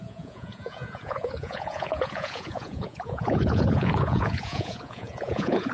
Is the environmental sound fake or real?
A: fake